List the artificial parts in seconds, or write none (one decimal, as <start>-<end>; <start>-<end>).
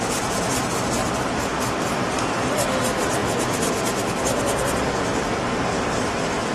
1.0-1.7